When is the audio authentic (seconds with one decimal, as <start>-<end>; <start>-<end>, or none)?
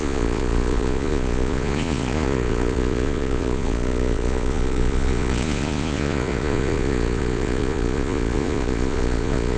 none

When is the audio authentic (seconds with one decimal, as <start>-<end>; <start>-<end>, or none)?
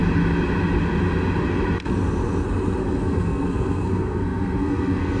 0.0-2.8